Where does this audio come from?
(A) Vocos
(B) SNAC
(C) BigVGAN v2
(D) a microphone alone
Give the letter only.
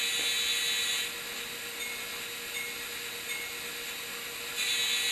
D